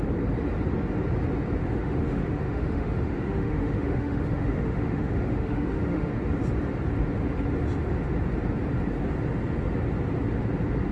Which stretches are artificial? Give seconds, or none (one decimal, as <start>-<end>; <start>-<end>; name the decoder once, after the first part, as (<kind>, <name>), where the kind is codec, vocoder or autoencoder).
1.6-6.1 (autoencoder, DAC-VAE)